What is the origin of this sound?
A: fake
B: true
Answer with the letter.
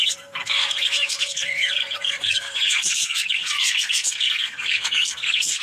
A